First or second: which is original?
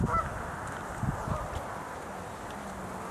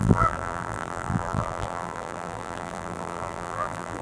first